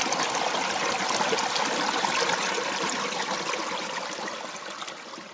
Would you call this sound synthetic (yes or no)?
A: no